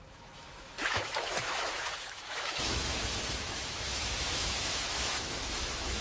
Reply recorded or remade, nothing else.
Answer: remade